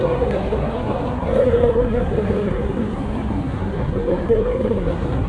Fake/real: fake